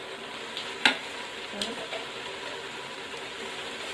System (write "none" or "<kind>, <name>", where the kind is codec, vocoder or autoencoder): none